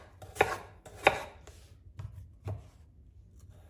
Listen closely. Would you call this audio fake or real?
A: real